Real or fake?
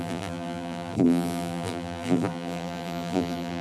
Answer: fake